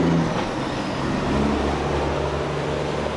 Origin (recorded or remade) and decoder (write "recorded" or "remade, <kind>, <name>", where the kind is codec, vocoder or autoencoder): recorded